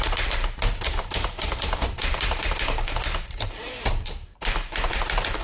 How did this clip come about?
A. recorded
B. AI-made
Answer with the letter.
B